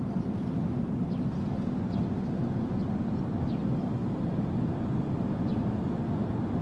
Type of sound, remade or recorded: recorded